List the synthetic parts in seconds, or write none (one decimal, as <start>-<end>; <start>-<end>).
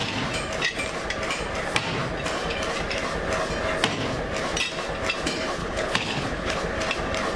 5.6-6.6